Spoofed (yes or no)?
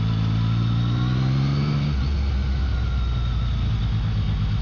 no